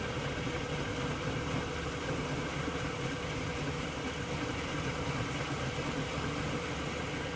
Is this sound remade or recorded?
recorded